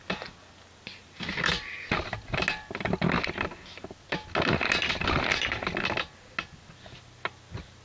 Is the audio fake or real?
real